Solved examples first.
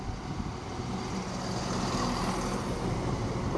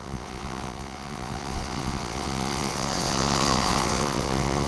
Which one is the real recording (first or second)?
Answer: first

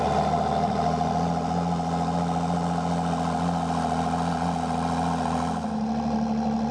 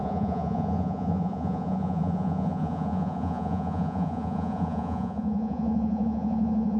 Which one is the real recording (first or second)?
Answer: first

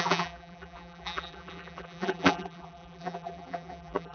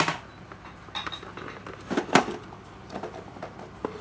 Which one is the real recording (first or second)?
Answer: second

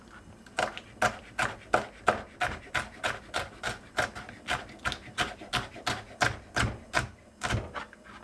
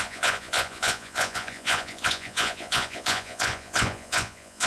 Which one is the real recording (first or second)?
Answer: first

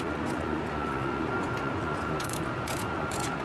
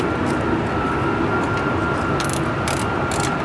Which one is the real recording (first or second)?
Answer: second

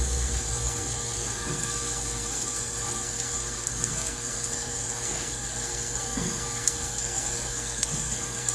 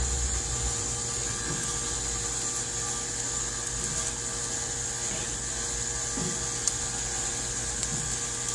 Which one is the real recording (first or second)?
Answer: second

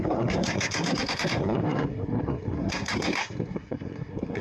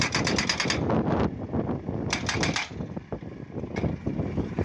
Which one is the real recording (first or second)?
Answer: second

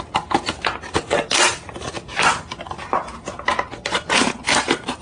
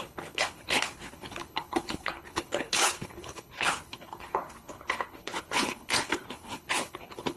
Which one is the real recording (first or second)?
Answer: first